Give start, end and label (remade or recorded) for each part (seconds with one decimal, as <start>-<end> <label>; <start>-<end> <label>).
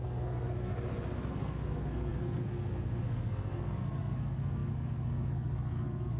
0.0-0.7 remade; 0.7-1.3 recorded; 1.3-6.2 remade